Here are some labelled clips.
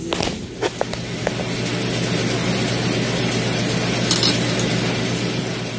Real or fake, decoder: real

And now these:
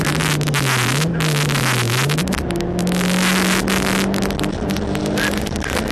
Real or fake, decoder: real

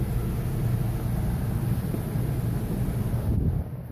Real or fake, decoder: real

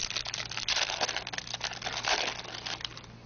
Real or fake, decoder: real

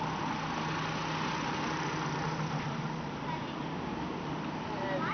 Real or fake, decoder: real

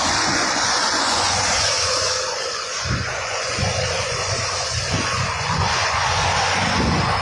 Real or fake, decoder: fake, vocoder, Vocos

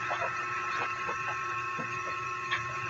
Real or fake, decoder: fake, vocoder, Vocos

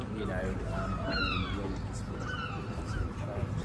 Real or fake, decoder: real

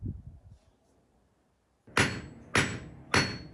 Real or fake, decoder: real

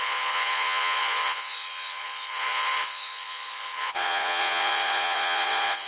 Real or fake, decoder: fake, vocoder, Vocos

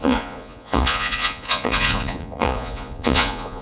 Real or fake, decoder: fake, vocoder, Vocos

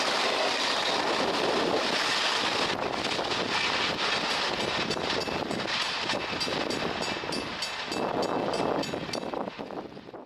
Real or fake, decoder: real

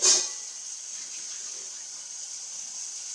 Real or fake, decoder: real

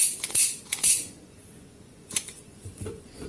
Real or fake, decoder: fake, vocoder, Vocos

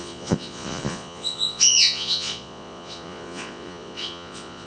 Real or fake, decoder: fake, vocoder, Vocos